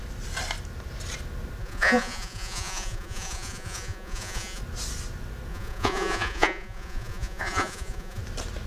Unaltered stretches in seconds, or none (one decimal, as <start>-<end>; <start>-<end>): 0.0-1.6; 4.6-5.5; 8.2-8.7